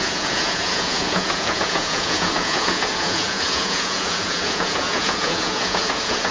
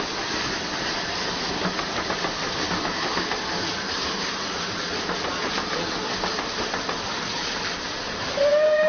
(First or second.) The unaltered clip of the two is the second